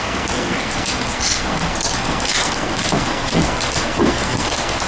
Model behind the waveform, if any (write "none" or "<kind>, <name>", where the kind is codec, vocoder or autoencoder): codec, SNAC